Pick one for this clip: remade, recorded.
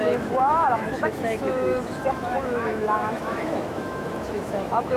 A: remade